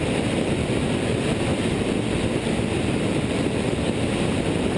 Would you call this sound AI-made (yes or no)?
no